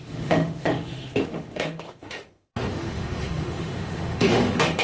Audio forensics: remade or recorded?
remade